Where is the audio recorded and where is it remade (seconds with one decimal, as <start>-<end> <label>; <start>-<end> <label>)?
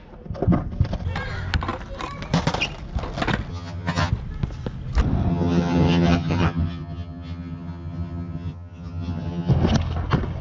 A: 0.0-3.5 recorded; 3.5-4.1 remade; 4.1-5.3 recorded; 5.3-9.5 remade; 9.5-10.4 recorded